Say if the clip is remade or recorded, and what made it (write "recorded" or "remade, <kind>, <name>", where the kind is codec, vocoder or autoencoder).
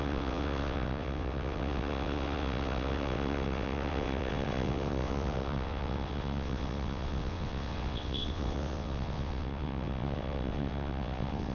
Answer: remade, vocoder, WaveNeXt